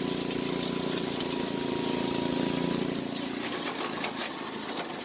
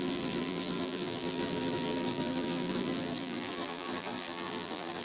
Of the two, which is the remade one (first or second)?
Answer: second